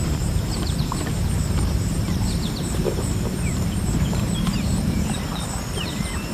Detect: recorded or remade remade